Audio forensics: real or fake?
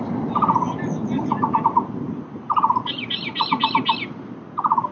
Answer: real